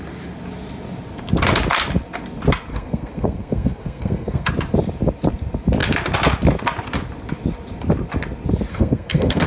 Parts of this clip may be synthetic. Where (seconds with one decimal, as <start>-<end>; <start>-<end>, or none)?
2.7-4.5; 8.7-9.5